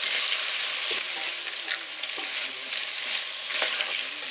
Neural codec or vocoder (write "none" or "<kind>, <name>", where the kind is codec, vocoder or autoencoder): none